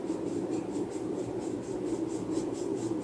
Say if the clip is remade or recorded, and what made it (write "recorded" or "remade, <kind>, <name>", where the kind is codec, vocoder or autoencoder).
recorded